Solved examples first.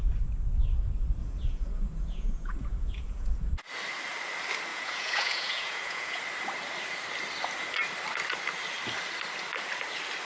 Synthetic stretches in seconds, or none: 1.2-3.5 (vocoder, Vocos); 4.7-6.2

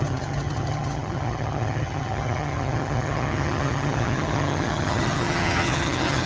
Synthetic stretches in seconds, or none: 0.0-6.3 (vocoder, HiFi-GAN)

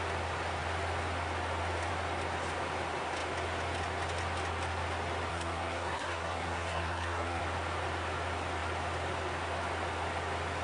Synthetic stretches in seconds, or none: 5.3-7.4 (codec, SNAC)

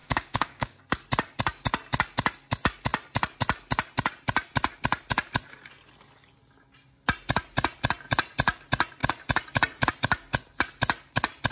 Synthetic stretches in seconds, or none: 0.0-0.8 (codec, DAC)